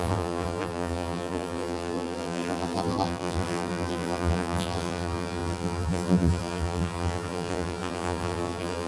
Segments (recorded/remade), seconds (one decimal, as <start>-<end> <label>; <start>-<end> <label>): 0.0-8.9 remade